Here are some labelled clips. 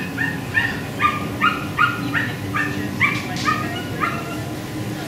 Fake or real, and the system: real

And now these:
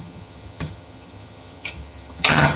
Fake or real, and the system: fake, vocoder, HiFi-GAN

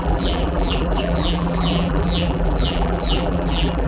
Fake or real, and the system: fake, vocoder, BigVGAN v2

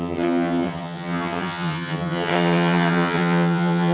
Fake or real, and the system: fake, vocoder, HiFi-GAN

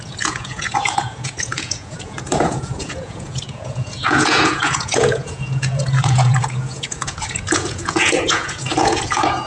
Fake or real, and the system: fake, vocoder, Vocos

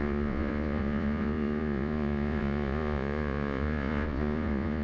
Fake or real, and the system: fake, vocoder, Vocos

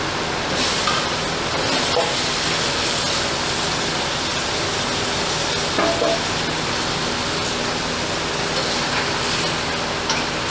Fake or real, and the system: real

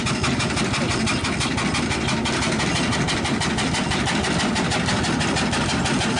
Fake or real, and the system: real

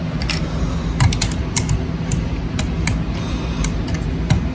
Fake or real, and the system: real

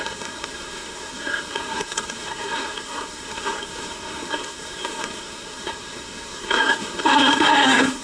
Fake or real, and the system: fake, codec, SNAC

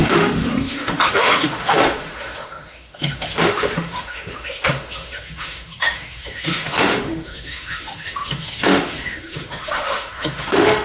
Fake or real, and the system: fake, autoencoder, DAC-VAE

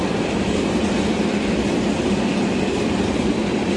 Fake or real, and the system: real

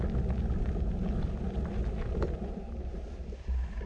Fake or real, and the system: real